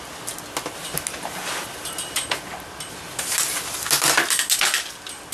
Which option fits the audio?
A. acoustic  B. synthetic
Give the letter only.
A